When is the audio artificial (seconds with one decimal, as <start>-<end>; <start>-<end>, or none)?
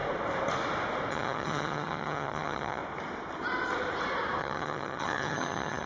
1.1-2.8; 4.4-5.9